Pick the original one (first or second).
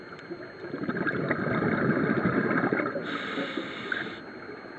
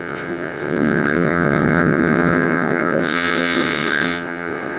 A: first